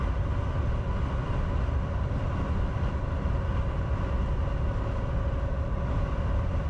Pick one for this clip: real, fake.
real